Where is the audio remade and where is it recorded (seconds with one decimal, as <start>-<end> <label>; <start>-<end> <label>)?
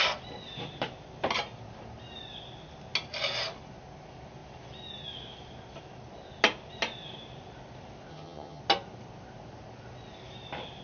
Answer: 0.0-8.1 recorded; 8.1-8.6 remade; 8.6-10.8 recorded